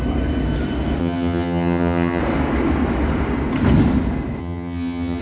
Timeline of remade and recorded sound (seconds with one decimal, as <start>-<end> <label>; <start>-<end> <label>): 0.0-1.0 recorded; 1.0-2.2 remade; 2.2-4.4 recorded; 4.4-5.2 remade